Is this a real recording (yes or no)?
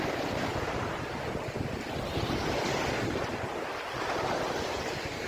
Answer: yes